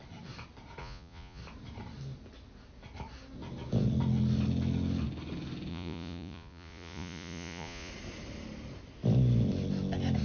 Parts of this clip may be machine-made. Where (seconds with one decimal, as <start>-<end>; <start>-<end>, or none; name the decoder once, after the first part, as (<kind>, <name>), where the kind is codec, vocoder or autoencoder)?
0.8-1.4 (vocoder, Vocos); 5.7-7.9